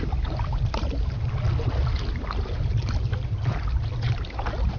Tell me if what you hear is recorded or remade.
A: recorded